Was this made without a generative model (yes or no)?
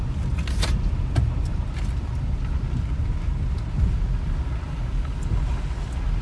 yes